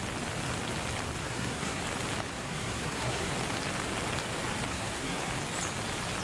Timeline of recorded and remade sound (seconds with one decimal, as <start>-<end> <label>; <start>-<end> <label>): 0.0-1.2 recorded; 1.2-1.8 remade; 1.8-2.3 recorded; 2.3-3.3 remade; 3.3-4.7 recorded; 4.7-5.3 remade; 5.3-6.2 recorded

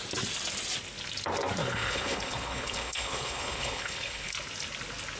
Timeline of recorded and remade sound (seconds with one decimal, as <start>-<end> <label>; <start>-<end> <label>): 0.0-1.6 recorded; 1.6-4.3 remade; 4.3-5.2 recorded